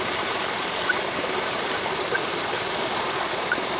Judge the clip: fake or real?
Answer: fake